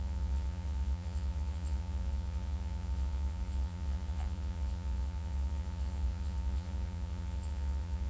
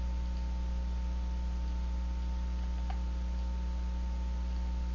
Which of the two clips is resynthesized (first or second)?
first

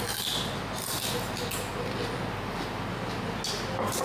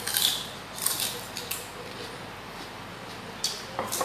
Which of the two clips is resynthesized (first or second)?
second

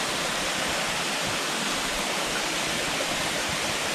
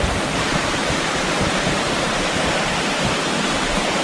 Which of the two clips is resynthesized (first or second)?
second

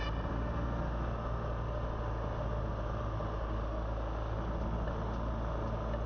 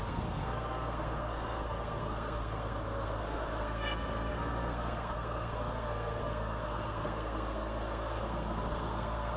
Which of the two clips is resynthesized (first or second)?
second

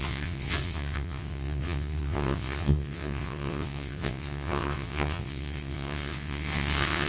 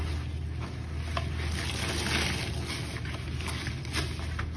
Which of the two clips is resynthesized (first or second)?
first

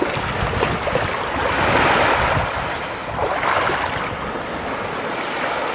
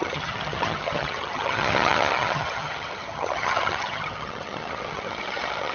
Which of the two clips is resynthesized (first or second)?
second